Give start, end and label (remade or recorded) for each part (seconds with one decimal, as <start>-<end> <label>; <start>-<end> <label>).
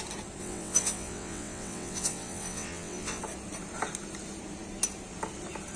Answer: 0.0-0.4 recorded; 0.4-3.2 remade; 3.2-5.8 recorded